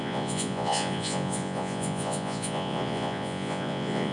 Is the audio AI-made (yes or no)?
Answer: yes